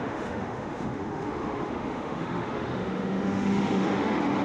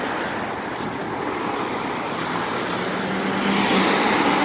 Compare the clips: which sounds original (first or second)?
second